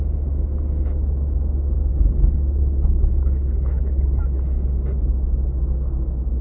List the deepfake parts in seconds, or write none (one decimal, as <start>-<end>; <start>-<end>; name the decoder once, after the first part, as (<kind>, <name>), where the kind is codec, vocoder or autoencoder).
1.9-4.2 (codec, HILCodec)